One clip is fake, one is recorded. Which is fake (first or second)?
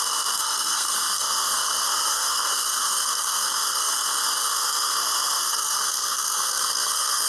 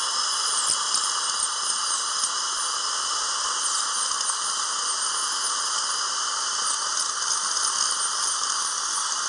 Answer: first